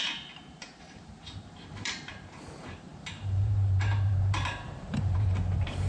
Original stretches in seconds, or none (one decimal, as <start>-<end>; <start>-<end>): none